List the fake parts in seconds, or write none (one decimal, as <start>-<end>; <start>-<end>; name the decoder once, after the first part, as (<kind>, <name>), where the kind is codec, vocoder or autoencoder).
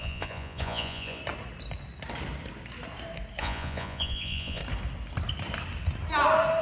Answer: 0.0-1.2 (vocoder, Vocos); 3.4-4.6